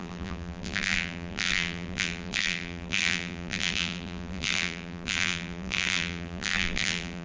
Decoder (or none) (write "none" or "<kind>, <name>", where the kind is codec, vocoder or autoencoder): vocoder, BigVGAN v2